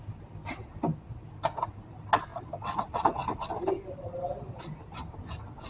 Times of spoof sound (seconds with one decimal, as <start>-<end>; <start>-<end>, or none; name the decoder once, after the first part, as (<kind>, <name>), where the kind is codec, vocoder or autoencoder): 2.3-4.6 (vocoder, BigVGAN v2)